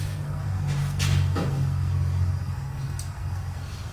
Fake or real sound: fake